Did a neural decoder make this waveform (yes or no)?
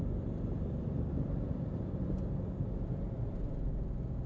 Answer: no